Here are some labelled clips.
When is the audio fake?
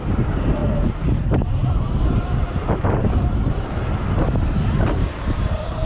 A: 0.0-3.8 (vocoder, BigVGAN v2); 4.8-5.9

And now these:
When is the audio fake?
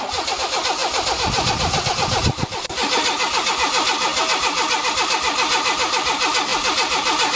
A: 0.8-1.5 (vocoder, BigVGAN v2); 6.5-7.4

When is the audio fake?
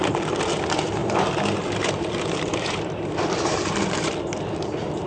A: 1.0-4.1 (vocoder, BigVGAN v2)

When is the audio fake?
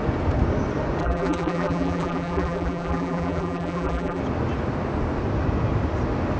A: 1.0-4.2 (vocoder, BigVGAN v2)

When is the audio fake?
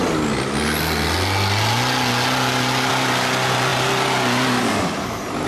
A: none